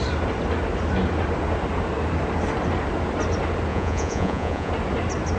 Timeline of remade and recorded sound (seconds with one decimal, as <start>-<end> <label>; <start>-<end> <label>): 0.0-3.7 recorded; 3.7-4.7 remade; 4.7-5.4 recorded